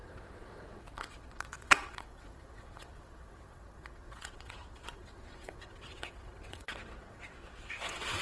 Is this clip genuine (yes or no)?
no